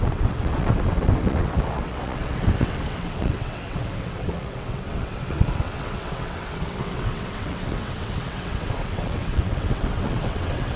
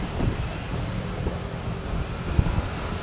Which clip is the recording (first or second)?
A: second